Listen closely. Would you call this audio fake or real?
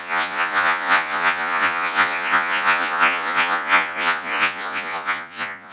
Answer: fake